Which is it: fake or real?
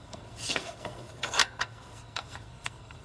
fake